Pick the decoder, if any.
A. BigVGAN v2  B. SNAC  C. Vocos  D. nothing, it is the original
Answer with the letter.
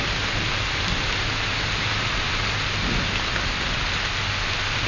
D